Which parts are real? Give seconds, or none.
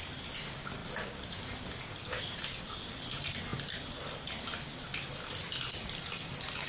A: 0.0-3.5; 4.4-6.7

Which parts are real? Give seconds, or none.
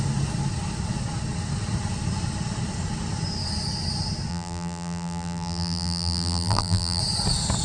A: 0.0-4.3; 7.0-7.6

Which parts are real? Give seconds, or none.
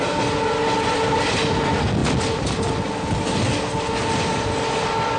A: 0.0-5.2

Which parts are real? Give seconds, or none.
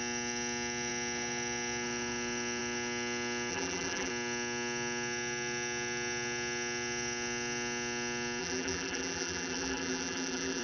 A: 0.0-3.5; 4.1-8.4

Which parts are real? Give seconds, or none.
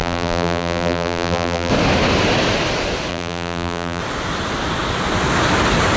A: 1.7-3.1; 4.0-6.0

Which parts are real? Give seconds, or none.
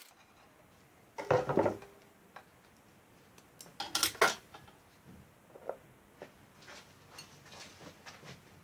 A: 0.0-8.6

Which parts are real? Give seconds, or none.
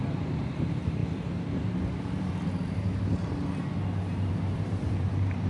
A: 1.0-4.3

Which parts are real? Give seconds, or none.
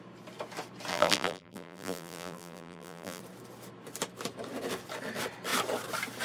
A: 0.0-0.9; 3.2-6.2